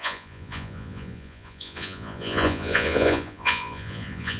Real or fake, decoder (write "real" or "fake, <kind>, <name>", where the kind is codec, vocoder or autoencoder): fake, vocoder, Vocos